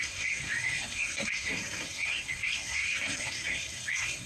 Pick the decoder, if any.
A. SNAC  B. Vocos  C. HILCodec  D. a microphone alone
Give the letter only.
A